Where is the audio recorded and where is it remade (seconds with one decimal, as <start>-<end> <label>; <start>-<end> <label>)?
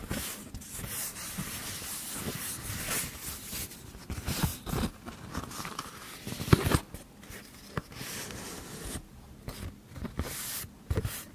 0.0-1.5 remade; 1.5-4.5 recorded; 4.5-9.1 remade; 9.1-11.3 recorded